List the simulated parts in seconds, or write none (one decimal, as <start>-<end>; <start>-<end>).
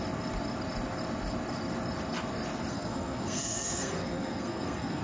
2.7-5.0